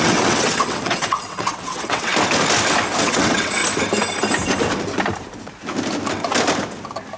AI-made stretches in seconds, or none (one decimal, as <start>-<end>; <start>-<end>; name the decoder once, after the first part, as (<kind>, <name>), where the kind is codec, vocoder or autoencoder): 0.0-2.1 (vocoder, WaveNeXt); 3.0-3.6